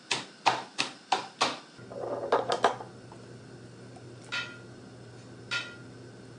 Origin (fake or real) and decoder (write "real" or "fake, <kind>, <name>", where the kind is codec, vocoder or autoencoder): real